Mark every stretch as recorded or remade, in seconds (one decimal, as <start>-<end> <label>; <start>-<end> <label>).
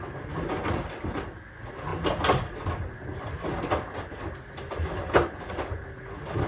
0.0-6.5 recorded